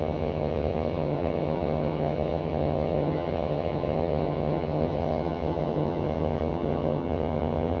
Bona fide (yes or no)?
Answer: no